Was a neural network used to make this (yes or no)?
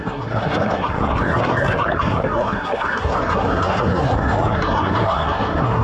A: yes